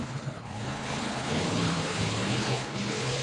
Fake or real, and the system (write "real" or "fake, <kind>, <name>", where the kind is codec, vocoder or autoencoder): fake, codec, HILCodec